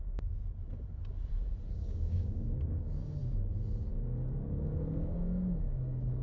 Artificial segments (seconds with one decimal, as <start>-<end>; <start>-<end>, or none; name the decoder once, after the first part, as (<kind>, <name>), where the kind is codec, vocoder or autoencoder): 0.0-0.4 (codec, DAC); 1.7-3.2; 3.9-6.2